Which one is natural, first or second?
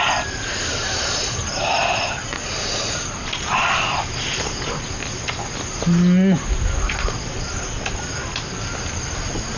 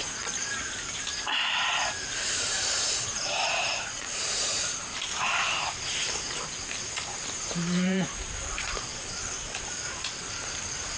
first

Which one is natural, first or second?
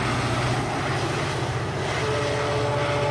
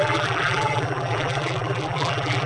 first